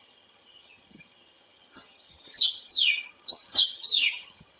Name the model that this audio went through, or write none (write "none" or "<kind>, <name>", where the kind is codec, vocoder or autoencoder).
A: vocoder, HiFi-GAN